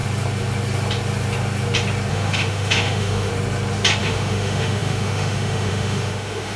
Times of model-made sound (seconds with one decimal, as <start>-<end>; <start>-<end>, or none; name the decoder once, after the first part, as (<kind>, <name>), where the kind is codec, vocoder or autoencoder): 2.1-3.3 (autoencoder, DAC-VAE); 4.0-6.6